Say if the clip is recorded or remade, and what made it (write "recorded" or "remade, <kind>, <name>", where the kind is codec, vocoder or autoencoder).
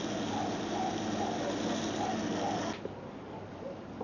recorded